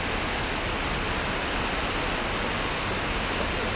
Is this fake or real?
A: real